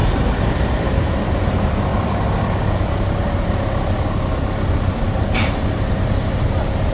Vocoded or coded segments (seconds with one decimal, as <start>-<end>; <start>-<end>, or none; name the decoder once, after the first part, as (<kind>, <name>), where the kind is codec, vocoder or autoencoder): 0.0-1.9 (vocoder, BigVGAN v2); 4.8-6.9